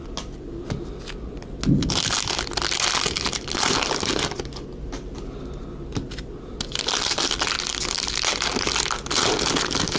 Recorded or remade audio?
recorded